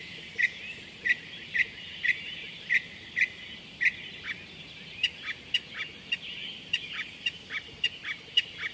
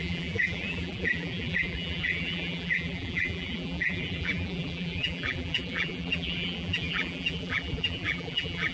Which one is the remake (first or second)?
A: second